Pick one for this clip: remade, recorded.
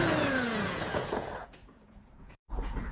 remade